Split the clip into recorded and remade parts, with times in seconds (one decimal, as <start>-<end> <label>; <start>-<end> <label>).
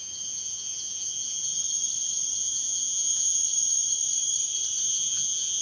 0.0-1.5 remade; 1.5-2.4 recorded; 2.4-3.4 remade; 3.4-4.9 recorded; 4.9-5.6 remade